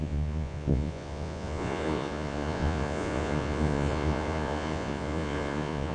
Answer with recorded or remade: remade